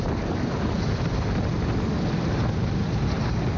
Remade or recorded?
recorded